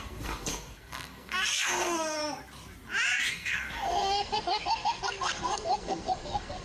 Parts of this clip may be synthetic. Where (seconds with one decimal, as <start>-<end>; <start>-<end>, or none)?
0.0-2.2; 3.3-6.6